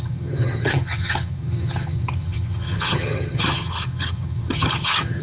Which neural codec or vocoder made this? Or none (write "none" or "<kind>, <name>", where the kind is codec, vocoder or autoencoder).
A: vocoder, HiFi-GAN